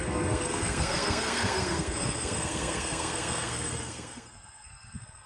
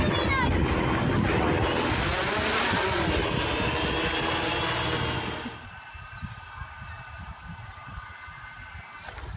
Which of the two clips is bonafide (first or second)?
second